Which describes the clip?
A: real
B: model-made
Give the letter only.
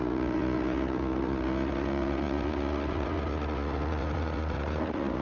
B